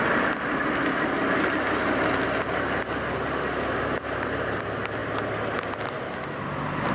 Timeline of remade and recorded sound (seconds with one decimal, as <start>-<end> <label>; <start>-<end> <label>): 0.0-6.9 recorded